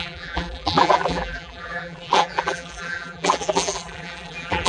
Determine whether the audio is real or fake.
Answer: fake